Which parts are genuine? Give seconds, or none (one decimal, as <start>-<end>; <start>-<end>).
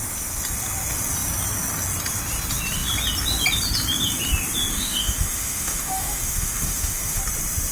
0.0-4.7; 7.2-7.7